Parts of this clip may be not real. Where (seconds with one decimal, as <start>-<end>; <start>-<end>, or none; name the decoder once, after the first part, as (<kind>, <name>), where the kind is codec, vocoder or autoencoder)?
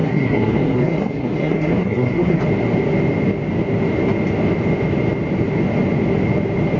0.0-2.4 (codec, SNAC)